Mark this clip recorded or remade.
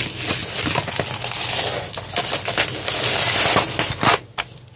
recorded